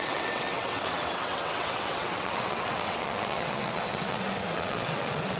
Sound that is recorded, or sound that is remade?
remade